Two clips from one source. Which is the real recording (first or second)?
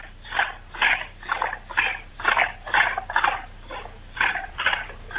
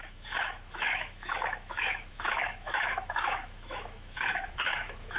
first